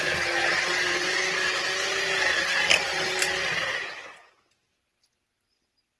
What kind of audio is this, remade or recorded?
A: recorded